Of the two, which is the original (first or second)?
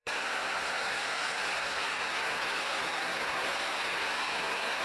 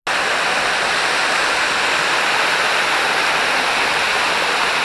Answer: second